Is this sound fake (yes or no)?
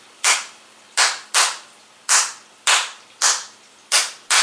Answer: no